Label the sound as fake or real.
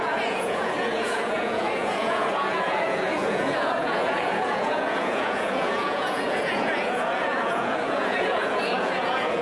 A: fake